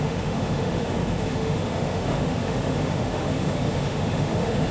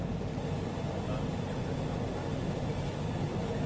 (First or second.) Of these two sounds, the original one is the second